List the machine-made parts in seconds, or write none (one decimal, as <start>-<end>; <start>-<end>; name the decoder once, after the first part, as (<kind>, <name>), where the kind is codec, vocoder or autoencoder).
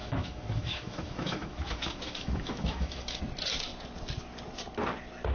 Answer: 0.0-3.2 (autoencoder, DAC-VAE)